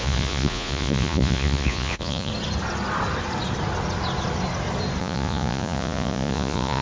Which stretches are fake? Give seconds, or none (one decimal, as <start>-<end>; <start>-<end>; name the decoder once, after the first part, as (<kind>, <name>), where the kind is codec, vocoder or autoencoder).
0.0-2.3 (vocoder, Vocos); 5.0-6.8